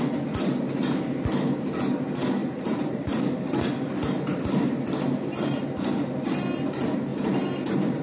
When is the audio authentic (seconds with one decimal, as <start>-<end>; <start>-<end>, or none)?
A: 0.0-2.4; 3.1-8.0